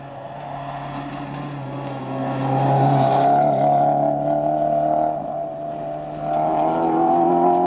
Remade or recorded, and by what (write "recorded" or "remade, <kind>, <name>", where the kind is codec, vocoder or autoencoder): recorded